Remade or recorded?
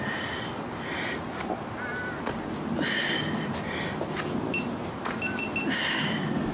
recorded